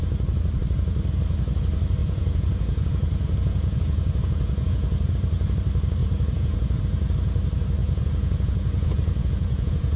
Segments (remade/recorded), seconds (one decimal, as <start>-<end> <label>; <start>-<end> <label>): 0.0-2.0 recorded; 2.0-5.1 remade; 5.1-6.0 recorded; 6.0-6.8 remade; 6.8-7.8 recorded; 7.8-10.0 remade